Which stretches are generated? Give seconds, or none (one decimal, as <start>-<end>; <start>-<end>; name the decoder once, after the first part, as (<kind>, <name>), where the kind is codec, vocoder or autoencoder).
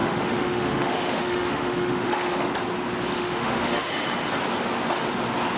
0.0-2.6 (autoencoder, DAC-VAE); 3.1-3.9